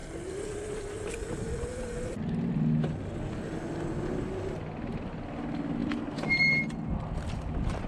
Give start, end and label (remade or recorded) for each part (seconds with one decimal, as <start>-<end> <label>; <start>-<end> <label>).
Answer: 0.0-5.8 recorded; 5.8-6.9 remade; 6.9-7.9 recorded